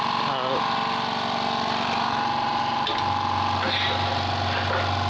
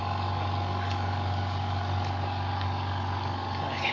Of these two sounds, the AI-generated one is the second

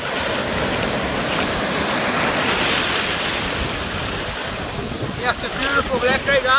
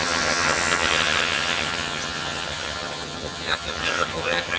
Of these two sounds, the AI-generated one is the second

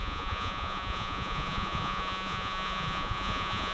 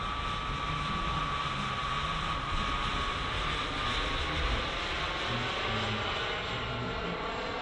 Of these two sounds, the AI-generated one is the first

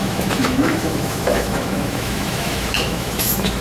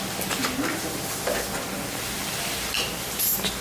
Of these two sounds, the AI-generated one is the first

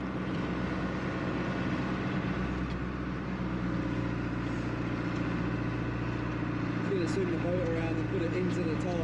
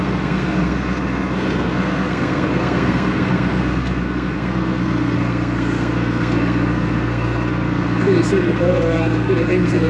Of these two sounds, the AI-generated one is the second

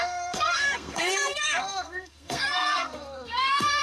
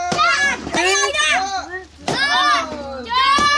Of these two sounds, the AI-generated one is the first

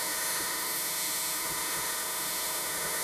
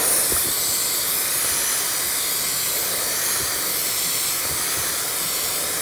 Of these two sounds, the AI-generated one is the first